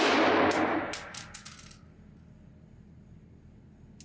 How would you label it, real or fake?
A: real